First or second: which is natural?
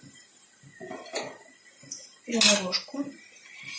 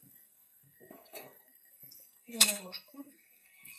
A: first